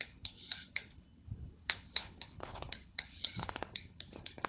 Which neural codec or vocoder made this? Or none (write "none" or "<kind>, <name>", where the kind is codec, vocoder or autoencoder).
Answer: codec, HILCodec